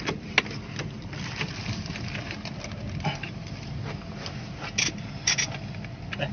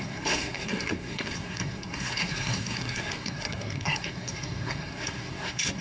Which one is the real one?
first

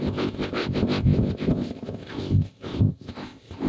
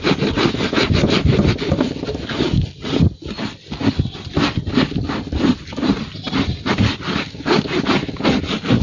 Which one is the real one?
second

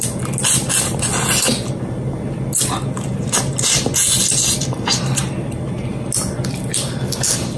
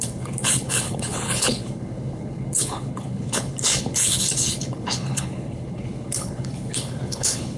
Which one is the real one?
first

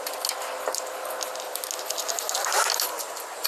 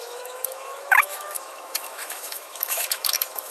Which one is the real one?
first